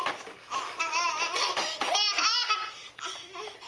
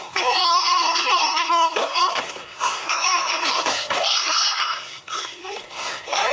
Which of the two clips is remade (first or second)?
second